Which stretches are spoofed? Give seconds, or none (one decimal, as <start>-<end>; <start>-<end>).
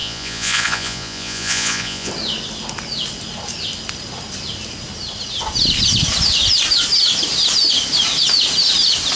0.0-2.1